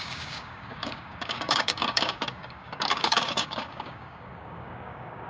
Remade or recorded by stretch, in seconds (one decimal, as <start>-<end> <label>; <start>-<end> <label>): 0.0-5.3 remade